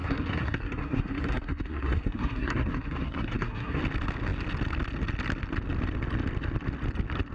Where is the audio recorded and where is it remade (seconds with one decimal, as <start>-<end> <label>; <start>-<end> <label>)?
0.0-3.8 remade; 3.8-7.3 recorded